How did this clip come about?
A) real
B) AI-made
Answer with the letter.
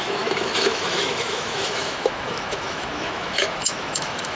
B